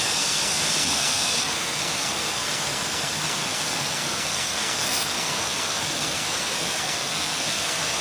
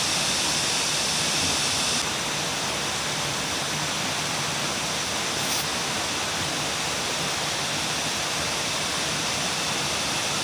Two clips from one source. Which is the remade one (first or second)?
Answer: first